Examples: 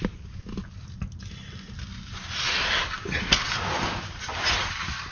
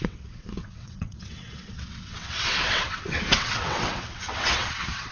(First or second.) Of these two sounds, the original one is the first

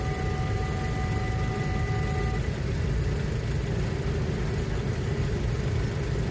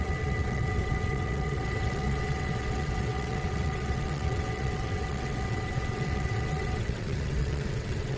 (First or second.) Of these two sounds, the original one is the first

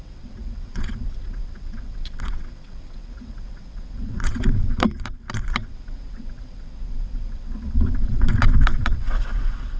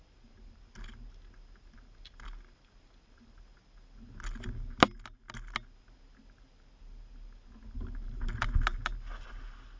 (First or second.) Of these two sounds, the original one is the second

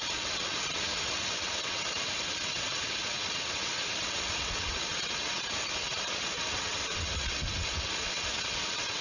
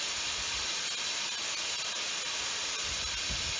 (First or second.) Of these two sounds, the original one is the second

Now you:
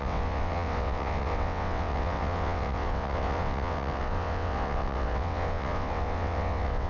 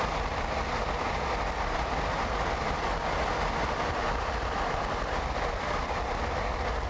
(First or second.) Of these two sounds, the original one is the second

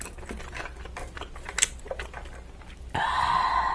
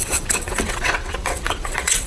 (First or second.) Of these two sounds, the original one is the first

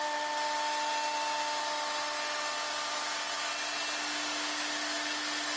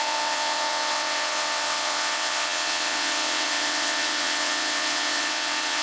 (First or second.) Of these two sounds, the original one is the first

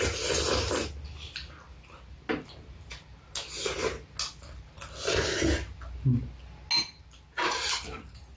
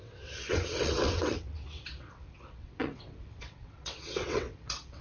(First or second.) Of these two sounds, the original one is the first